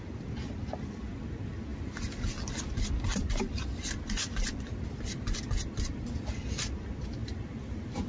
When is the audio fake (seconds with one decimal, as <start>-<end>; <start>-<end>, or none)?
1.7-6.3; 7.2-8.1

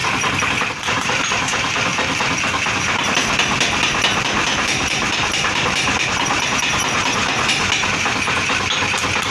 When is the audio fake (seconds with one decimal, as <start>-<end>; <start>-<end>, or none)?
0.9-1.9; 4.2-7.2